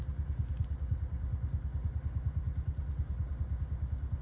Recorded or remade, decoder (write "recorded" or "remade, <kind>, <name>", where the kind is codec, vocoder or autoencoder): recorded